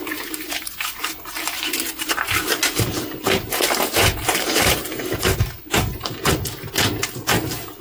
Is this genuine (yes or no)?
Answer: yes